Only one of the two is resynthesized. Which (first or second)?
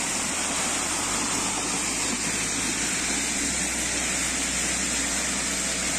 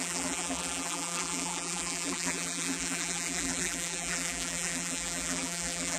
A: second